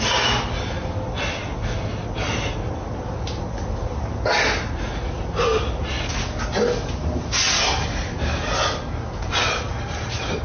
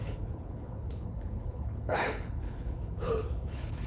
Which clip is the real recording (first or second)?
first